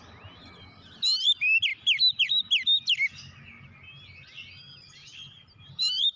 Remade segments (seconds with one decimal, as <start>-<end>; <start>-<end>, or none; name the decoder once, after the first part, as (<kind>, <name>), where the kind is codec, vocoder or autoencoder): none